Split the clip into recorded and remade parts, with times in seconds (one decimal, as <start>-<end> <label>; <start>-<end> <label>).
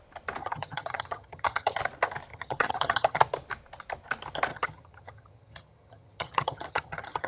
0.0-0.4 recorded; 0.4-1.8 remade; 1.8-2.3 recorded; 2.3-3.2 remade; 3.2-4.5 recorded; 4.5-7.3 remade